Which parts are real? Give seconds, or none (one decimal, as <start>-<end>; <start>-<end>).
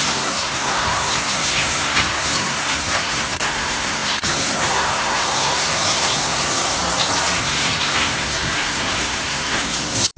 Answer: 6.8-7.4